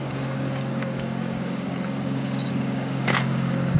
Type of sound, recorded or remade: remade